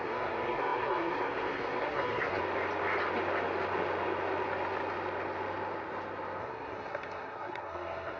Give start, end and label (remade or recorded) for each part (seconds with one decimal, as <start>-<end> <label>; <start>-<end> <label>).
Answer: 0.0-2.4 remade; 2.4-6.4 recorded; 6.4-8.2 remade